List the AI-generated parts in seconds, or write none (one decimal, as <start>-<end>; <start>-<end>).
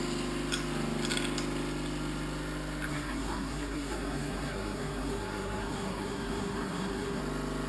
2.9-7.2